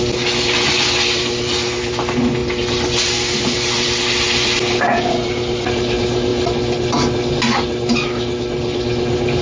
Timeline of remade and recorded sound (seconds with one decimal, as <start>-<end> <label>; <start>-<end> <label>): 0.0-9.4 recorded